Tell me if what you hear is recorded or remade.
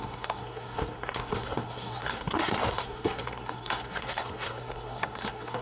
remade